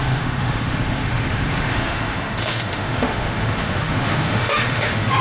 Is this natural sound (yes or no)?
no